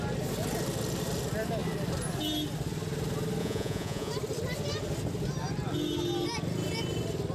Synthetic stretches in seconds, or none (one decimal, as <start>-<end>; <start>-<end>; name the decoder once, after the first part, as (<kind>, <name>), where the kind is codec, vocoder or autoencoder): 3.4-4.1 (vocoder, Vocos)